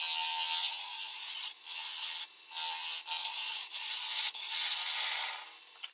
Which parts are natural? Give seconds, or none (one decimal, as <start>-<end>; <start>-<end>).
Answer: 0.0-0.6; 1.6-3.2; 4.5-5.9